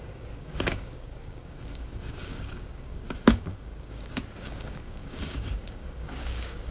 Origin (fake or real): fake